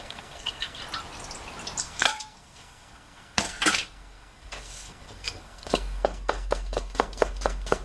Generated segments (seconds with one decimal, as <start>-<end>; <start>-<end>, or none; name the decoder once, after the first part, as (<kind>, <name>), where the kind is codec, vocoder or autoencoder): 0.0-0.8 (codec, SNAC); 1.8-7.8